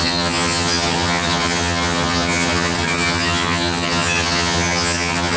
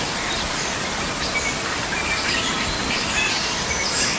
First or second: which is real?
second